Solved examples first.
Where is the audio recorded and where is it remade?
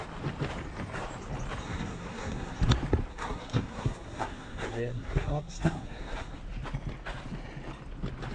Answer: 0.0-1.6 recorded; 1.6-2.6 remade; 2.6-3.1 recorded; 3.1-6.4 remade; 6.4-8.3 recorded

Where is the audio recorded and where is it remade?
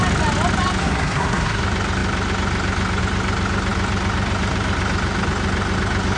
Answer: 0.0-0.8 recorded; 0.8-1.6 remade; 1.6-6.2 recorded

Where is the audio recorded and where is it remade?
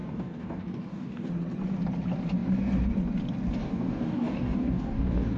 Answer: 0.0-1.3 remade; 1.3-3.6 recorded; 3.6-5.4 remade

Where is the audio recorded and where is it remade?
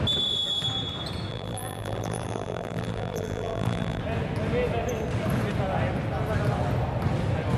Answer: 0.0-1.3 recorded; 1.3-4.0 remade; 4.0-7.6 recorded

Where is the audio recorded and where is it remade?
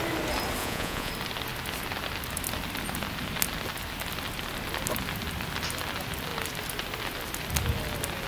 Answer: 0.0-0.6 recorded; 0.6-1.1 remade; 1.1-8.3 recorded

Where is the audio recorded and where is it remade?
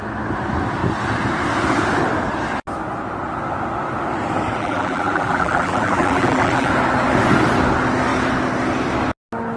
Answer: 0.0-4.6 recorded; 4.6-6.7 remade; 6.7-9.6 recorded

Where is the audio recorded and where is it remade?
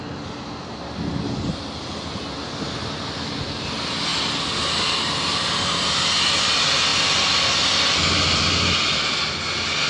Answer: 0.0-9.9 recorded